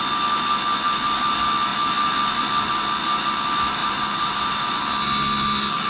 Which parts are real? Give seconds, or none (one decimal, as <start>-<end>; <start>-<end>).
0.0-3.8; 4.8-5.9